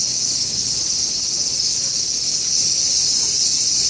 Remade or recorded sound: remade